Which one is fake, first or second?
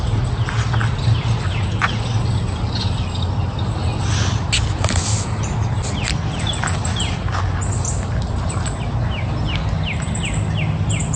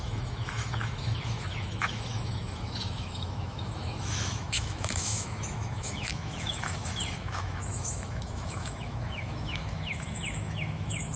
second